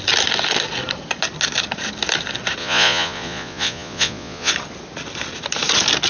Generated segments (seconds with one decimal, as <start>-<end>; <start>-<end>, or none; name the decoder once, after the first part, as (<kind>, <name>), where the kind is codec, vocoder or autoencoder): 2.6-4.5 (vocoder, Vocos)